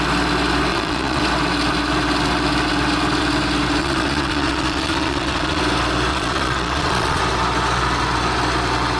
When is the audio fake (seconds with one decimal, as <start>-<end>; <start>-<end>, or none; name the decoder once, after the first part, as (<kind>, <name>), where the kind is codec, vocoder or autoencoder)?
0.7-1.2 (vocoder, Vocos); 3.8-5.6; 6.1-7.2